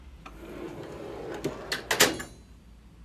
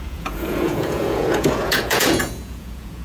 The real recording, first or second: first